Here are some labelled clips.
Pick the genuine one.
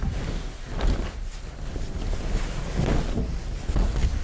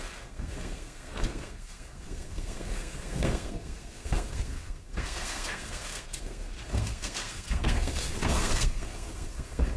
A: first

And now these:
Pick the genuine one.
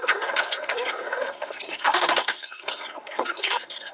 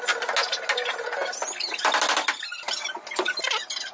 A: second